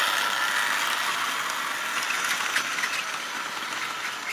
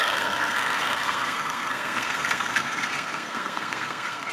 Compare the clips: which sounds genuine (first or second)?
first